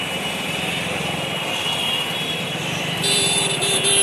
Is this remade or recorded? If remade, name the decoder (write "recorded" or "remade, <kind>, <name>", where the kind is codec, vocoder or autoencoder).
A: remade, vocoder, BigVGAN v2